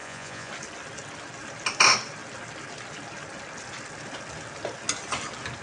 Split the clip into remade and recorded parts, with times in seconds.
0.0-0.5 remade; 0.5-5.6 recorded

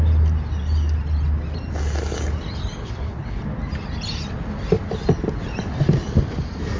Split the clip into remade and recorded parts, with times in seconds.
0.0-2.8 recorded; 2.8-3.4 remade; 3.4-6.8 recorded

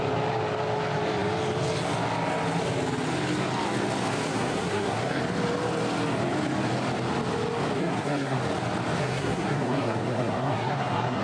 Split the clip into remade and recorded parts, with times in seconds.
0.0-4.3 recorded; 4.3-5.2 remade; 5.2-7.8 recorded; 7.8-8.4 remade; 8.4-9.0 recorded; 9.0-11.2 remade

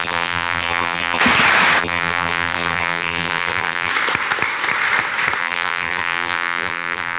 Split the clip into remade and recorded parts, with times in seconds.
0.0-1.2 remade; 1.2-1.8 recorded; 1.8-3.9 remade; 3.9-5.4 recorded; 5.4-7.2 remade